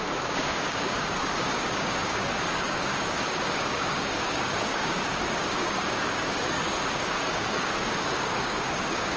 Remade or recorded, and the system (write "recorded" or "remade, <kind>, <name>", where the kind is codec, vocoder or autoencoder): remade, codec, DAC